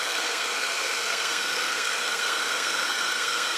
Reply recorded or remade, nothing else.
remade